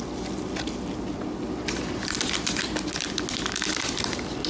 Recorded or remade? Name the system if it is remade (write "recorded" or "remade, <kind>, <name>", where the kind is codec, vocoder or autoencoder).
recorded